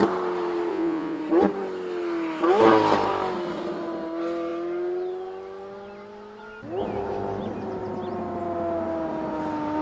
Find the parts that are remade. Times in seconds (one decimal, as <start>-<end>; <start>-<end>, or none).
0.7-1.2